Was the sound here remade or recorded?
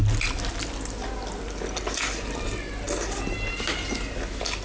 recorded